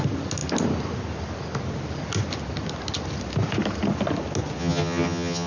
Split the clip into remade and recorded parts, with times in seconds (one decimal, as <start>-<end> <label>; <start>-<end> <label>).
0.0-4.6 recorded; 4.6-5.5 remade